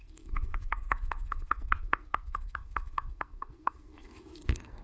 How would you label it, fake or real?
fake